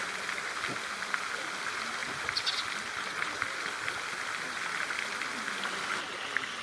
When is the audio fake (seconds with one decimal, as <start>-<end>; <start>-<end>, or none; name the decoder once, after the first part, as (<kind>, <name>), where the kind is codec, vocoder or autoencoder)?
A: none